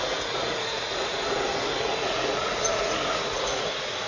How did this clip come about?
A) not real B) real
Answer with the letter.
A